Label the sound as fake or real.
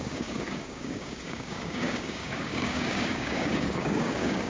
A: fake